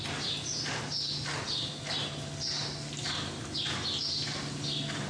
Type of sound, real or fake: real